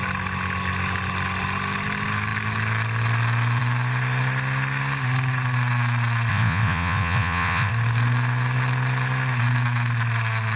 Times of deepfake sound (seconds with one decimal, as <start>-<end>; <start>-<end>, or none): 6.3-7.7